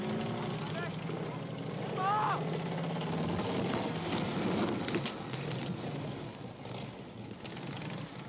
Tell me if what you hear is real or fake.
real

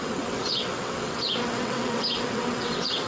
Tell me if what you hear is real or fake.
fake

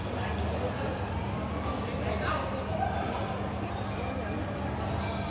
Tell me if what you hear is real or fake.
real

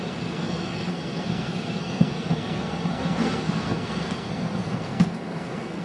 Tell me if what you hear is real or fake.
fake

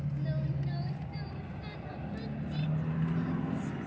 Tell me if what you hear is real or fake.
real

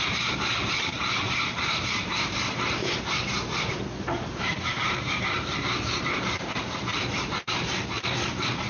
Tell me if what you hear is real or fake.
fake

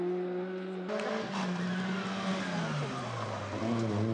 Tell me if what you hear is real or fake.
real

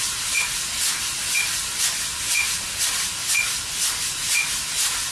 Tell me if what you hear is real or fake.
real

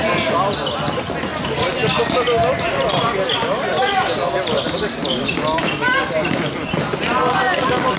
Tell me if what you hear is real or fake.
real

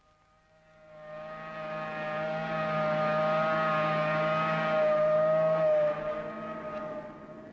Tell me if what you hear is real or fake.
real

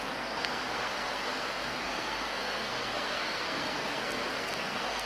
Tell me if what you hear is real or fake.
fake